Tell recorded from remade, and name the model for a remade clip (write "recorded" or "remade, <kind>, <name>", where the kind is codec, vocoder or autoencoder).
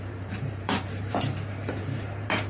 remade, vocoder, BigVGAN v2